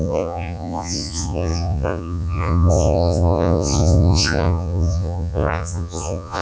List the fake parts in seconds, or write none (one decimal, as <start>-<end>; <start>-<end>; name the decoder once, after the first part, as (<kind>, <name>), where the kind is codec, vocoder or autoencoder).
0.0-6.4 (vocoder, Vocos)